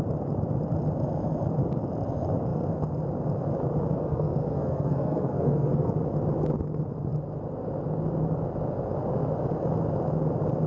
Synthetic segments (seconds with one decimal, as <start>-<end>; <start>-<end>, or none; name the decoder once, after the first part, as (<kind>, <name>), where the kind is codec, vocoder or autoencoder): 4.0-5.9 (codec, SNAC)